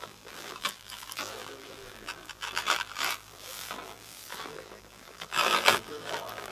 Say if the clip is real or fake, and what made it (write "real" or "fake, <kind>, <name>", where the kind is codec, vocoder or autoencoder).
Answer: fake, vocoder, BigVGAN v2